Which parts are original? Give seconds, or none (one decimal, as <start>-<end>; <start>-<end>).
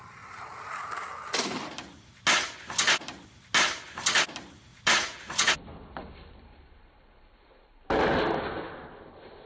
0.0-4.7; 5.5-9.5